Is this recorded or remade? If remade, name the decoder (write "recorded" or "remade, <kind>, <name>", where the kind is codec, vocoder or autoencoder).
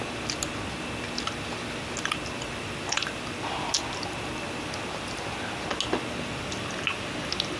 recorded